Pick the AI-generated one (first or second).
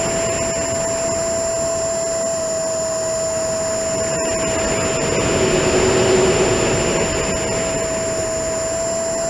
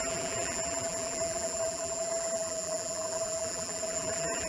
second